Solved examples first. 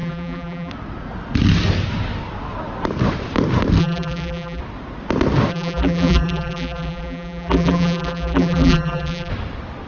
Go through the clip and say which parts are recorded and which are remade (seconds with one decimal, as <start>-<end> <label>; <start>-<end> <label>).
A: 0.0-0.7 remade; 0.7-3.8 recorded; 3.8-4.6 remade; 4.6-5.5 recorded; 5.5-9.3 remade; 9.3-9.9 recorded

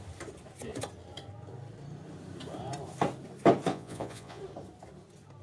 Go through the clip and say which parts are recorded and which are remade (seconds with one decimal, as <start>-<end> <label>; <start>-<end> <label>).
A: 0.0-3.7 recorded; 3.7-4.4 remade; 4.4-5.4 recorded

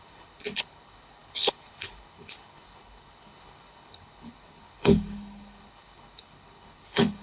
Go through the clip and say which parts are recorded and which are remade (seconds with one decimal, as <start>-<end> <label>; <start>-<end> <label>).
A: 0.0-7.2 remade

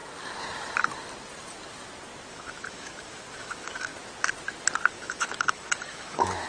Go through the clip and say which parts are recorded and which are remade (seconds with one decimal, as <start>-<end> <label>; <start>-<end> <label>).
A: 0.0-2.3 recorded; 2.3-3.9 remade; 3.9-4.9 recorded; 4.9-6.5 remade

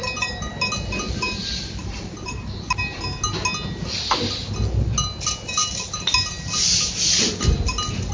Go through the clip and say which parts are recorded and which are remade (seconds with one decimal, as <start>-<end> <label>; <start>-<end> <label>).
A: 0.0-8.1 recorded